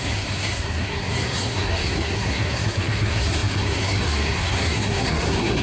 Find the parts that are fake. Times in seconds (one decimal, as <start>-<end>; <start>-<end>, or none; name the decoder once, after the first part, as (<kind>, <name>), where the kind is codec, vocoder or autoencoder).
0.0-5.6 (codec, SNAC)